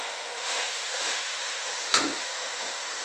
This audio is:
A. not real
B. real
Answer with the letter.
A